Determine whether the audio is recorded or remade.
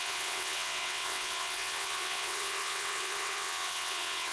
remade